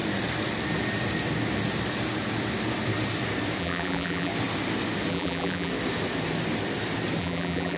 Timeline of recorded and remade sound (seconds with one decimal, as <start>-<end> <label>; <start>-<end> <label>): 0.0-3.6 recorded; 3.6-4.3 remade; 4.3-5.1 recorded; 5.1-5.7 remade; 5.7-7.2 recorded; 7.2-7.8 remade